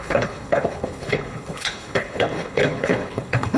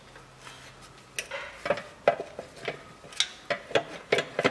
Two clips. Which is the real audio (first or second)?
second